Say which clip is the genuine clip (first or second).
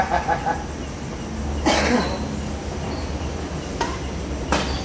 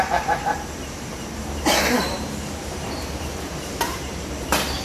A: first